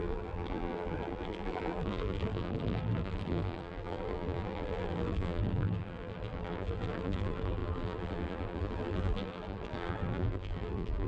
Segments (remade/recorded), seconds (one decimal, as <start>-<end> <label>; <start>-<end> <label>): 0.0-11.1 remade